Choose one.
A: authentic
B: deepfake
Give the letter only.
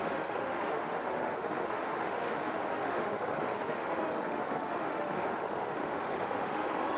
B